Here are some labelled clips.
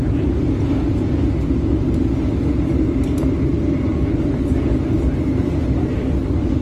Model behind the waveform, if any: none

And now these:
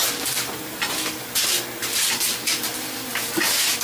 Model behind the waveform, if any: none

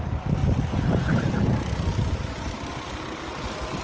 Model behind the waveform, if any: none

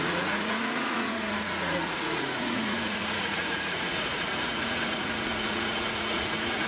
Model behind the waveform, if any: vocoder, Vocos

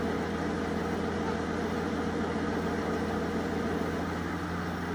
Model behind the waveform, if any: none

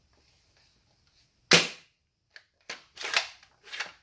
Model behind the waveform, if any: none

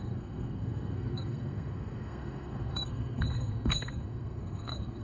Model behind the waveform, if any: codec, SNAC